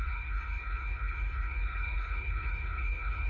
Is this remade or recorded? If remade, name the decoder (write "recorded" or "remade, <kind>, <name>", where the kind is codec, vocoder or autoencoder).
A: remade, codec, HILCodec